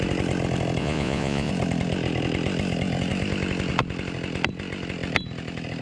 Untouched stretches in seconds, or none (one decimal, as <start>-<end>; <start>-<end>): 0.0-0.8; 1.5-5.8